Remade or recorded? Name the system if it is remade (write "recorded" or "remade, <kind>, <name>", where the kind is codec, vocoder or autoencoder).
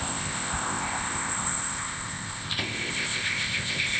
remade, codec, ZipCodec